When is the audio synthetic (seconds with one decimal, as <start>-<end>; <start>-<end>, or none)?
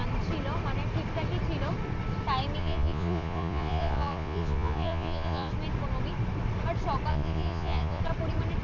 2.6-5.5; 7.1-8.0